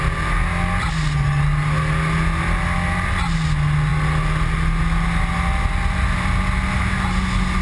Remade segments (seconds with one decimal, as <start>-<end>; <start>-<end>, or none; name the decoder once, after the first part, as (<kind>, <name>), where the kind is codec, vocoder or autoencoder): none